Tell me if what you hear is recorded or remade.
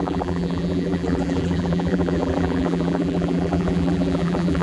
remade